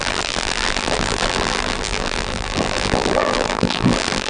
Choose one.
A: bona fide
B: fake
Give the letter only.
B